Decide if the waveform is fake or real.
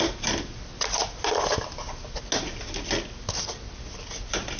real